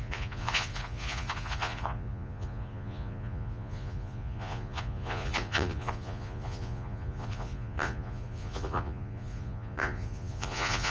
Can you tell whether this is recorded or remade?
remade